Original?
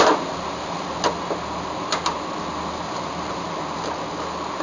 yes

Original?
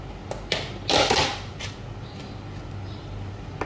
yes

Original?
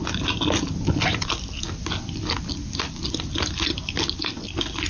yes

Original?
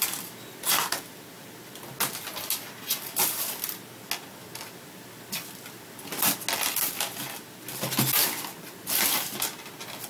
yes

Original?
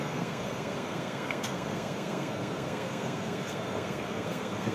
no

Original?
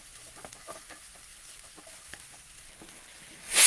yes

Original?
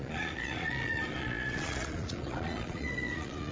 no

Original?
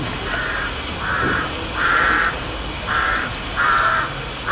yes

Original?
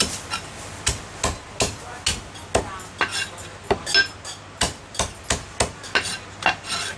yes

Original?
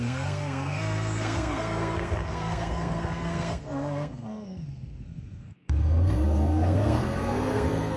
no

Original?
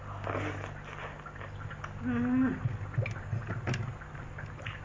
yes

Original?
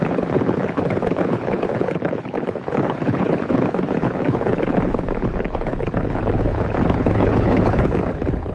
no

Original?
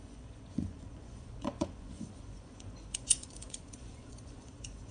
no